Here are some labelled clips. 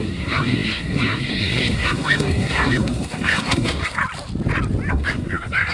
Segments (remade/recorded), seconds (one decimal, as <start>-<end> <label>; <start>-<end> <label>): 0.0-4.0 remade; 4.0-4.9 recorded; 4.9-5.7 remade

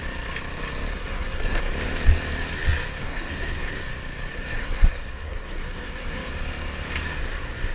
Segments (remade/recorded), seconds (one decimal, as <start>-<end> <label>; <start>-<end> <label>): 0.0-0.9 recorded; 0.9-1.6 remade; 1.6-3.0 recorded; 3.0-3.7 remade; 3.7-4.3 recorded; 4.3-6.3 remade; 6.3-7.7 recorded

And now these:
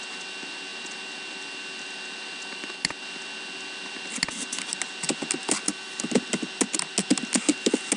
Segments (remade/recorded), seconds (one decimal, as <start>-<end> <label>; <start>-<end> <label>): 0.0-8.0 recorded

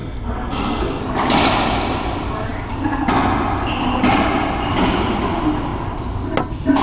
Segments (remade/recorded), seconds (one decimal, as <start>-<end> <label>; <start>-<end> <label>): 0.0-1.0 remade; 1.0-6.8 recorded

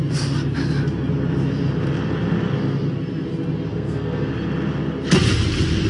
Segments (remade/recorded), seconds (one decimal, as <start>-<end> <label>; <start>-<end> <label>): 0.0-3.7 recorded; 3.7-4.3 remade; 4.3-5.9 recorded

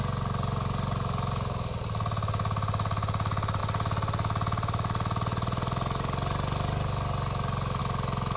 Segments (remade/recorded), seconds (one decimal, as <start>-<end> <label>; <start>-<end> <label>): 0.0-8.4 recorded

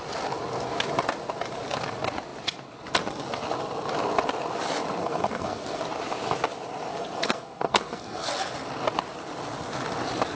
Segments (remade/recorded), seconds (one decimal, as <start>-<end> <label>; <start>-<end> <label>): 0.0-5.0 recorded; 5.0-5.8 remade; 5.8-6.9 recorded; 6.9-8.3 remade; 8.3-10.3 recorded

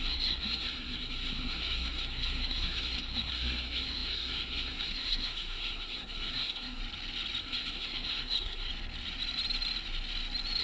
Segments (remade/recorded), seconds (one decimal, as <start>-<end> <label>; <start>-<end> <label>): 0.0-6.8 remade; 6.8-7.4 recorded; 7.4-8.7 remade; 8.7-10.6 recorded